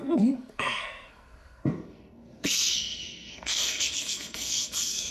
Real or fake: fake